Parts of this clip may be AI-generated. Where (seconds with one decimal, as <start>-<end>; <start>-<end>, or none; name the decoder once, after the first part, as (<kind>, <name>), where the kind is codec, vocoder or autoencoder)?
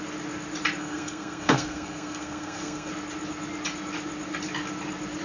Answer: 0.8-2.9 (codec, SNAC)